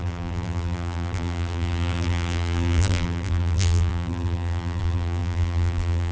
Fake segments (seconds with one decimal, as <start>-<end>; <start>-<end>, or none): 0.0-6.1